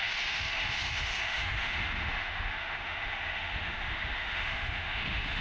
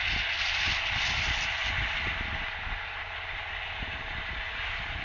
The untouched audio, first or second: second